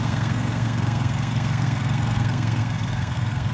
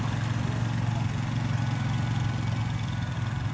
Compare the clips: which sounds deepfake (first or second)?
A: first